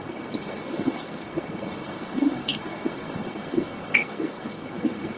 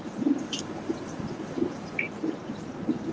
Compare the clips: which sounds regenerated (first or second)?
first